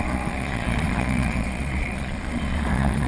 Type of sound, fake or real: fake